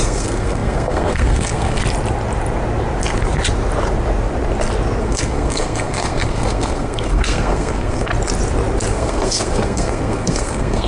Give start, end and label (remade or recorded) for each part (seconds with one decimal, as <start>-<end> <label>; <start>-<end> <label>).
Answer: 0.0-1.8 remade; 1.8-5.0 recorded; 5.0-8.1 remade; 8.1-8.9 recorded; 8.9-10.9 remade